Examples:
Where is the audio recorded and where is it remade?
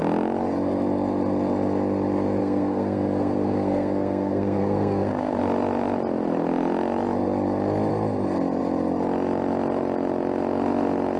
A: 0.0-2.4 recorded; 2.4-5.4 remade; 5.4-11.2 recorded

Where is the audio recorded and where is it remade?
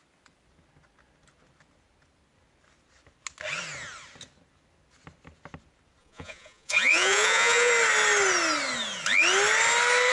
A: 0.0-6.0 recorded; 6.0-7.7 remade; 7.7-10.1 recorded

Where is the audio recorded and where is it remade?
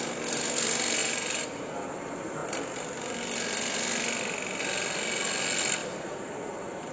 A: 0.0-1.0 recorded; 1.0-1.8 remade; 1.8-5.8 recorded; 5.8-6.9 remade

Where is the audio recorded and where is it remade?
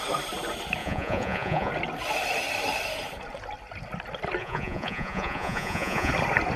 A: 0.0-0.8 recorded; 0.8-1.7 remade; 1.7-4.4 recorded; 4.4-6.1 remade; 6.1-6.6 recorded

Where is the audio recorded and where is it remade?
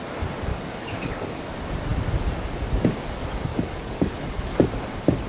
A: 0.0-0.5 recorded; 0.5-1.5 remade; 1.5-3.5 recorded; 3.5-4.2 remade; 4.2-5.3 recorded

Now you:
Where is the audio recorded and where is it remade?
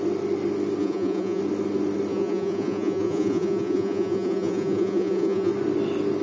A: 0.0-0.8 recorded; 0.8-1.4 remade; 1.4-2.1 recorded; 2.1-5.5 remade; 5.5-6.2 recorded